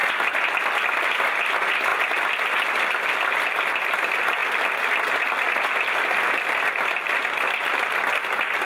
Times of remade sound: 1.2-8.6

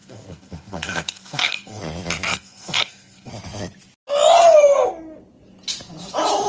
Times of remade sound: 0.0-1.8; 2.3-3.3; 4.4-4.9

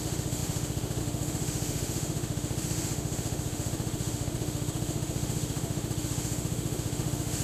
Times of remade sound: 0.0-7.4

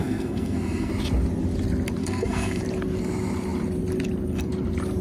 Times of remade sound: 0.0-0.9; 2.0-2.6

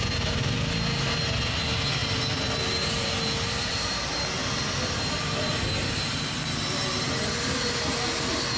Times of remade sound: none

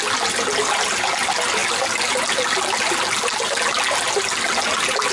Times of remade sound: none